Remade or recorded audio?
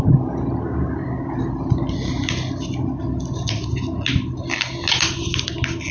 recorded